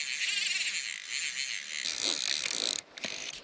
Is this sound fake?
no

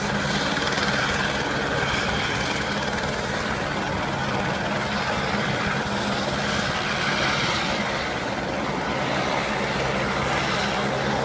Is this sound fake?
no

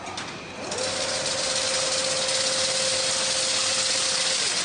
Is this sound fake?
no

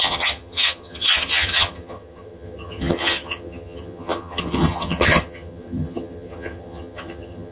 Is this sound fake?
yes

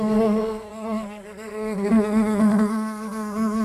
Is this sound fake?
yes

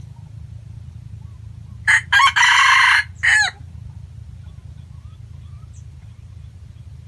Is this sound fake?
no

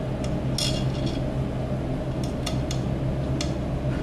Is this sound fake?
no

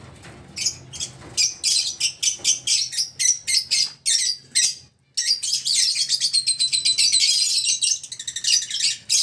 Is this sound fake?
no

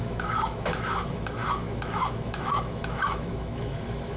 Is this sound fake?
yes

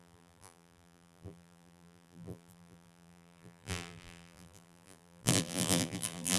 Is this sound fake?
yes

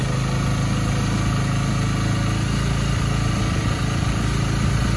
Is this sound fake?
no